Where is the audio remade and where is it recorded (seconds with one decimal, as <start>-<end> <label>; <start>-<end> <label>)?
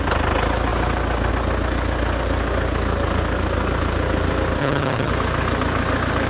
0.0-4.6 recorded; 4.6-5.1 remade; 5.1-6.3 recorded